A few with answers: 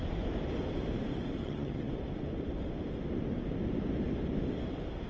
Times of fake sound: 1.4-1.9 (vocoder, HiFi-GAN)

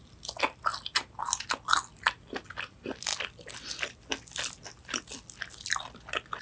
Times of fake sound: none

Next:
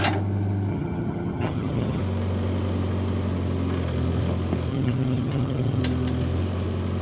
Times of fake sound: 0.7-2.0 (vocoder, HiFi-GAN); 4.7-5.8

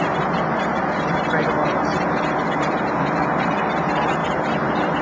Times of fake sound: none

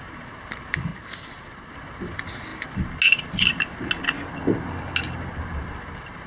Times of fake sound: none